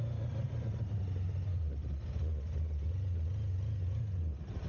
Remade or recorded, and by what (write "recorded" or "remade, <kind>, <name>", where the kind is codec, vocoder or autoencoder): recorded